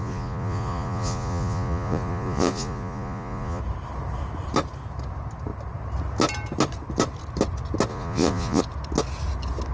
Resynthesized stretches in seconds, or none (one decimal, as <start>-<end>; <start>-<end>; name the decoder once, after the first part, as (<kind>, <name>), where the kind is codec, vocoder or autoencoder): 0.0-3.6 (vocoder, Vocos); 7.9-8.6